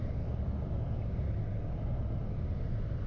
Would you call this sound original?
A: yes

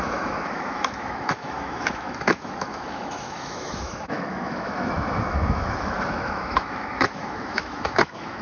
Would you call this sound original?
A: no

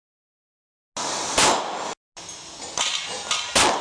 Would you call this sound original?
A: yes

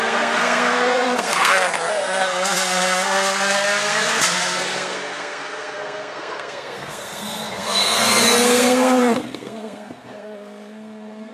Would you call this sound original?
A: no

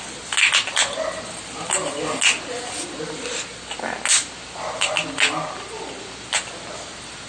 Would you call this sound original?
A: yes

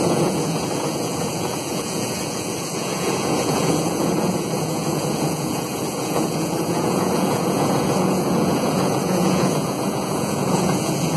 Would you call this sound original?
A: no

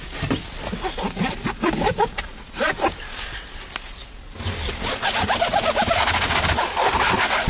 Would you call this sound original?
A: yes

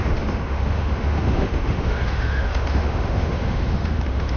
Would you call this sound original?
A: no